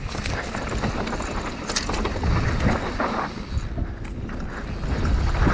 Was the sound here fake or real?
real